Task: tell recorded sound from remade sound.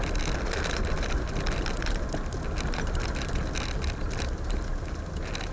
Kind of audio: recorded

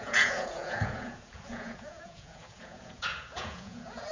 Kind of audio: remade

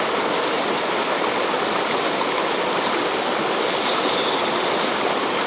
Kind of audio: recorded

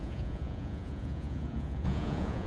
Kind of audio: remade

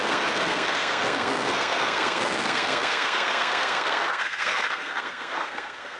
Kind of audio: remade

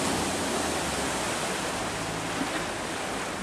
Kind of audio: recorded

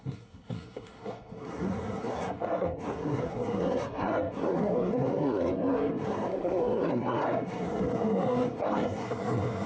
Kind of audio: remade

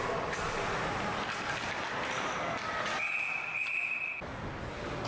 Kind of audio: recorded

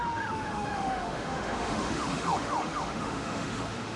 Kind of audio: remade